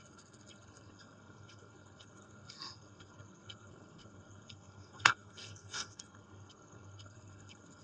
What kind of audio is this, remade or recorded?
remade